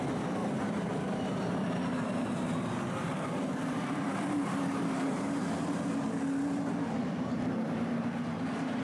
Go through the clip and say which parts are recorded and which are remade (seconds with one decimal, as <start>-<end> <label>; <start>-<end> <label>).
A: 0.0-8.8 remade